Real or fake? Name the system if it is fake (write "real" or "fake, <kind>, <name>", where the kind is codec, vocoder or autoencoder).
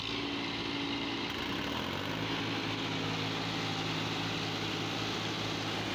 real